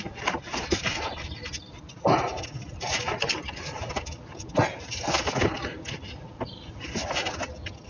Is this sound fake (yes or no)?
no